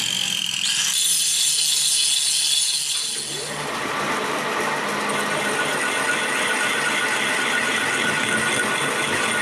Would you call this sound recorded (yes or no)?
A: yes